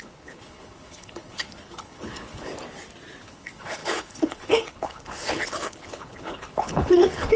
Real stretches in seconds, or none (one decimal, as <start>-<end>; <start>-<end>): 2.5-3.2